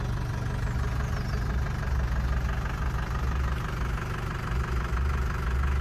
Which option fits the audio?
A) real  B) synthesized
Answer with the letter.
A